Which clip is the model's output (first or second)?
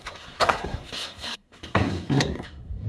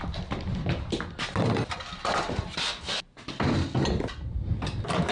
first